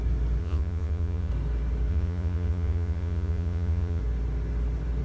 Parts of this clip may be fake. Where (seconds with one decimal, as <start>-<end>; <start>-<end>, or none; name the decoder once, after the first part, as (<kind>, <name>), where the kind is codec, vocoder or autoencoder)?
0.4-1.3 (vocoder, Vocos); 1.9-4.0